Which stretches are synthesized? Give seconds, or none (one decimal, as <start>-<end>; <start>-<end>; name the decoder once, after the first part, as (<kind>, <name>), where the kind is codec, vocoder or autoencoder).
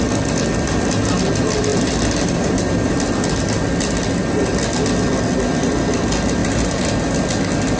1.7-2.9 (vocoder, BigVGAN v2); 6.4-7.1